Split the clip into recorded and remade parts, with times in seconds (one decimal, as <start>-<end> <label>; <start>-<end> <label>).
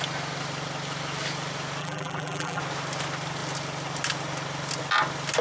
0.0-1.8 recorded; 1.8-2.6 remade; 2.6-5.4 recorded